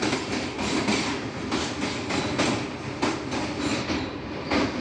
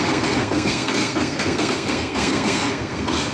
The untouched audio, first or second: first